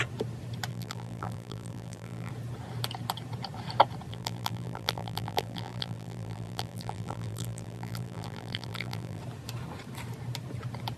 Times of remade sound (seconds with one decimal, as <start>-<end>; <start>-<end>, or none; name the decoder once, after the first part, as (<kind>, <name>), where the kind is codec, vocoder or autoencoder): 0.7-2.3 (vocoder, BigVGAN v2); 4.1-9.2